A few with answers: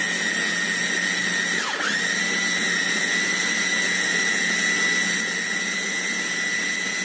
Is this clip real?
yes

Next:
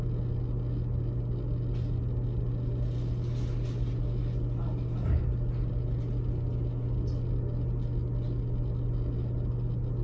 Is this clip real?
yes